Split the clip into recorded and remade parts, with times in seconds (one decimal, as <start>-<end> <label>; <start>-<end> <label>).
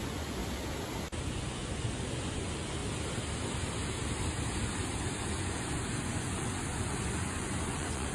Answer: 0.0-0.4 remade; 0.4-1.2 recorded; 1.2-2.8 remade; 2.8-5.4 recorded; 5.4-8.1 remade